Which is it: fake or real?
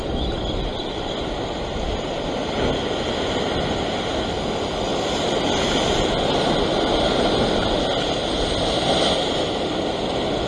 real